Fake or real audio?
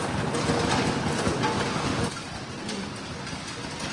real